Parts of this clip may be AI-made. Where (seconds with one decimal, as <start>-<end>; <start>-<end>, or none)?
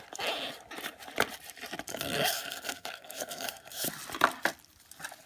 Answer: 1.9-3.9